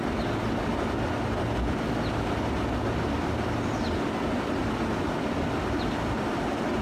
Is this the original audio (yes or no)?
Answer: yes